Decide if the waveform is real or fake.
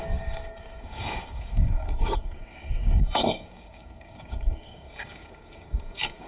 fake